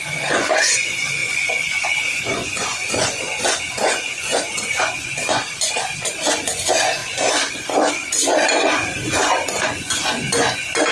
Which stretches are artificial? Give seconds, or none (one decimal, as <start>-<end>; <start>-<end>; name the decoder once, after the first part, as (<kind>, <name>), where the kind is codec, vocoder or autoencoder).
0.0-10.9 (vocoder, Vocos)